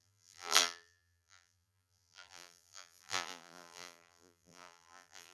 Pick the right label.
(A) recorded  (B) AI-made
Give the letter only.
B